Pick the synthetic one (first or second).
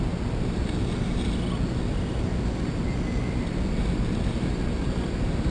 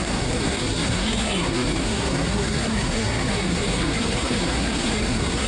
second